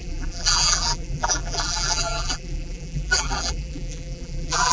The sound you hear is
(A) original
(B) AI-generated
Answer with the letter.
B